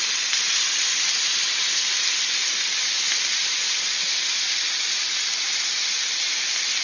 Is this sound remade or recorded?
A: recorded